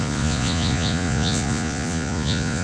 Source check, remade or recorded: remade